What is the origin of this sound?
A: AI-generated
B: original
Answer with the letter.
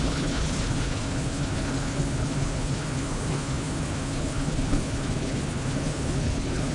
A